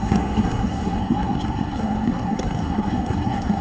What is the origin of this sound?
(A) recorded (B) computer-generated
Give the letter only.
B